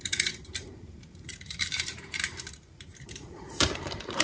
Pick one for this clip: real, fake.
fake